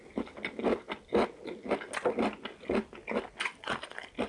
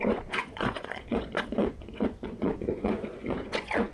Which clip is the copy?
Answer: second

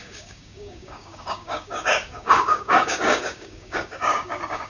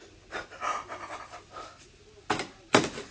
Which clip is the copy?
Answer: first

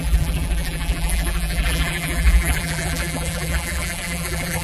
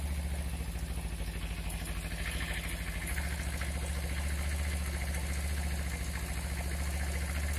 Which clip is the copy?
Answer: first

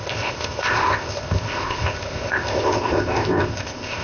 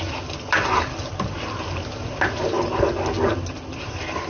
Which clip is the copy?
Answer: first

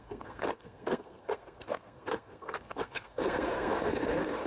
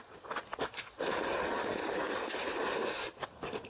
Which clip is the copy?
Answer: first